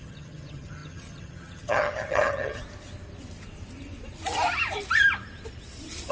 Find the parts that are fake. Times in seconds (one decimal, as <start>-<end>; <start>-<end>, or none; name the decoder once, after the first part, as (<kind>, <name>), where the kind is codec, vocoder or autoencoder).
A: 0.0-2.6 (vocoder, HiFi-GAN)